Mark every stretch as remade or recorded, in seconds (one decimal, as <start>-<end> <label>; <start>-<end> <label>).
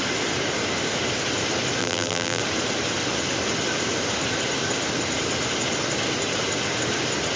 0.0-1.8 recorded; 1.8-2.4 remade; 2.4-7.4 recorded